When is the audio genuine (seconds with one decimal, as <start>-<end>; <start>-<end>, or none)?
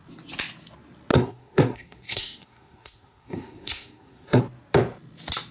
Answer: 0.0-1.1; 4.4-5.5